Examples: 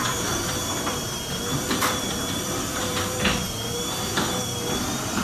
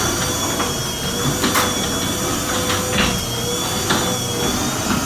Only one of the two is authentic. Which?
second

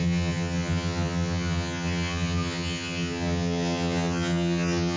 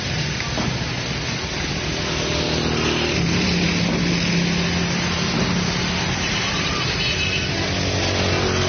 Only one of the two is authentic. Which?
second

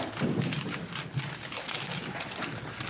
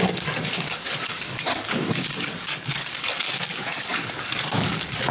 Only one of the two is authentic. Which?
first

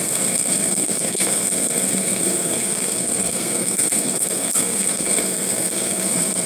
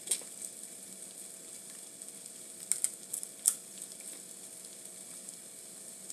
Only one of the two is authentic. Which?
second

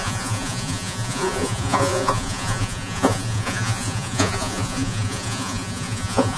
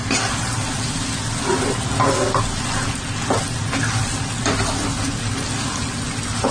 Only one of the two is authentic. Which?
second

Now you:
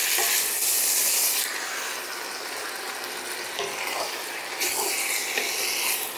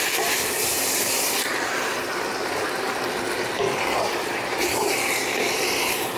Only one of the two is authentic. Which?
first